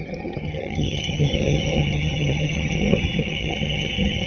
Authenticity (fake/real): fake